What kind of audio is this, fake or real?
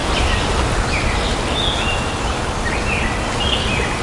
real